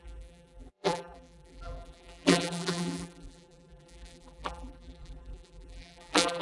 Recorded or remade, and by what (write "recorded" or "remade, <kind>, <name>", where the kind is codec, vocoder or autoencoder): remade, vocoder, BigVGAN v2